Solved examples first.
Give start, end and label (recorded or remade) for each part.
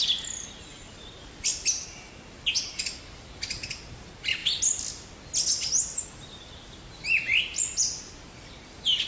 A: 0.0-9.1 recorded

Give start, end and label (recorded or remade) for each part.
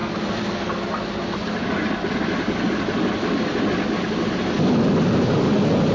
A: 0.0-5.9 recorded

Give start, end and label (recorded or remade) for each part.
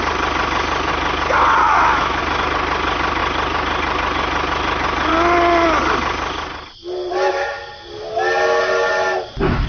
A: 0.0-1.6 recorded; 1.6-2.2 remade; 2.2-9.7 recorded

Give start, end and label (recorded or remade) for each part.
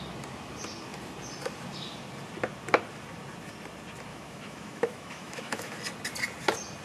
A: 0.0-4.1 recorded; 4.1-5.8 remade; 5.8-6.8 recorded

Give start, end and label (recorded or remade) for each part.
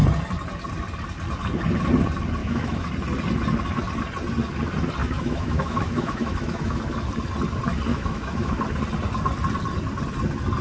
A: 0.0-2.4 recorded; 2.4-2.9 remade; 2.9-5.0 recorded; 5.0-6.8 remade; 6.8-7.9 recorded; 7.9-8.6 remade; 8.6-10.6 recorded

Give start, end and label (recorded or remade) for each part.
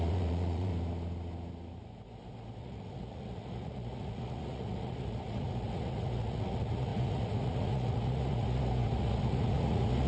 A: 0.0-0.7 remade; 0.7-2.6 recorded; 2.6-10.1 remade